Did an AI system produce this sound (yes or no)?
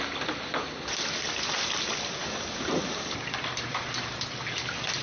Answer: no